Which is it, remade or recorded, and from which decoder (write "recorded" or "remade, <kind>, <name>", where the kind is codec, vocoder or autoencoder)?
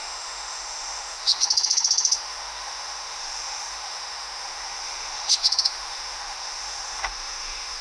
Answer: remade, autoencoder, DAC-VAE